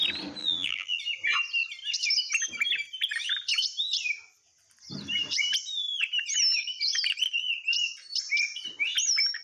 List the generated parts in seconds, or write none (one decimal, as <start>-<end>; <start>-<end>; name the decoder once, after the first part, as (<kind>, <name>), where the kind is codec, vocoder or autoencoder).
0.4-1.0 (vocoder, BigVGAN v2)